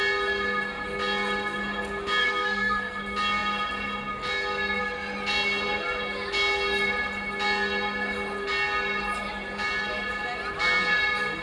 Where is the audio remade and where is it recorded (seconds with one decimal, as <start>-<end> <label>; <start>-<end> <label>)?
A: 0.0-2.2 recorded; 2.2-3.0 remade; 3.0-11.4 recorded